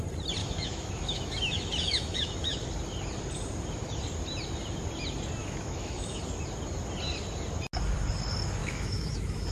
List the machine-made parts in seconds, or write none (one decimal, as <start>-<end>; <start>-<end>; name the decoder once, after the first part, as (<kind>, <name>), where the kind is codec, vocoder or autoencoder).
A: 0.4-2.6 (autoencoder, DAC-VAE); 5.4-6.2; 8.6-9.5